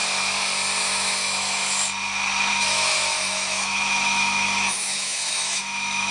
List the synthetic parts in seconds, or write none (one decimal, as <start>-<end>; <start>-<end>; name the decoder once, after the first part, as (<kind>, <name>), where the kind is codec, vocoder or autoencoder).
0.8-1.6 (autoencoder, DAC-VAE); 2.5-6.1